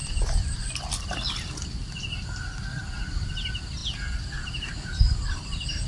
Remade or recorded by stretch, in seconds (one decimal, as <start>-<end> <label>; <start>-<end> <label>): 0.0-5.9 recorded

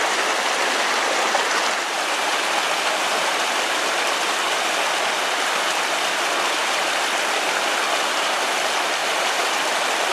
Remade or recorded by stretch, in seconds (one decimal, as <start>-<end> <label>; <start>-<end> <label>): 0.0-9.0 recorded; 9.0-9.5 remade; 9.5-10.1 recorded

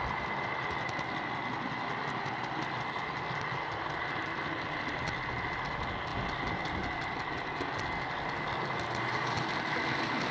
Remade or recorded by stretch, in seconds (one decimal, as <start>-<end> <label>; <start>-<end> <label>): 0.0-10.3 recorded

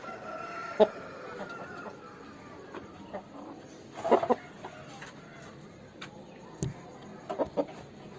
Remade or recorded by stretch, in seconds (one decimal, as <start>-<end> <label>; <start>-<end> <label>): 0.0-2.9 remade; 2.9-5.6 recorded; 5.6-7.1 remade; 7.1-8.2 recorded

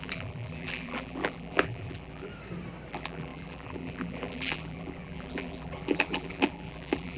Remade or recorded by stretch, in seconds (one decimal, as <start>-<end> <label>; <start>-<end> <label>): 0.0-2.3 remade; 2.3-2.9 recorded; 2.9-7.2 remade